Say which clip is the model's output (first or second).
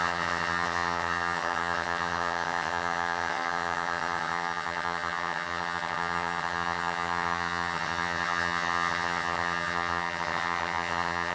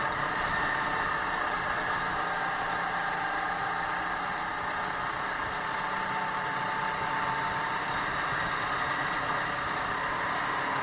first